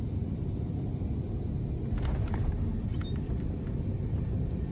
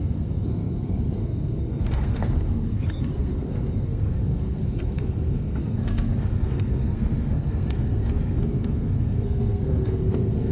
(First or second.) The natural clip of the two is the first